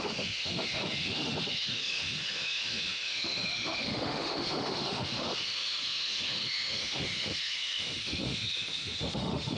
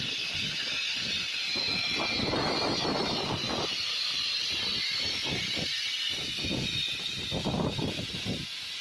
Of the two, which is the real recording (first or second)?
second